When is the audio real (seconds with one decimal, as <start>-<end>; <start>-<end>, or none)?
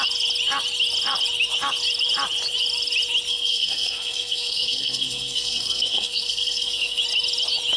0.0-3.3; 7.0-7.8